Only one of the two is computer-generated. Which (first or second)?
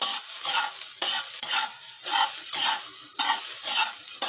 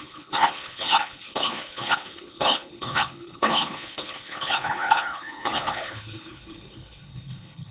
second